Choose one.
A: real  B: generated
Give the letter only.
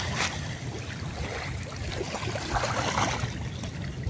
A